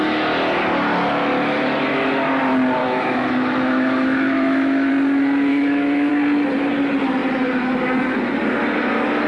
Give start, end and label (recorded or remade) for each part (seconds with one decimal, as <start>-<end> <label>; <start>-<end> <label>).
0.0-2.8 recorded; 2.8-4.9 remade; 4.9-5.5 recorded; 5.5-6.1 remade; 6.1-9.3 recorded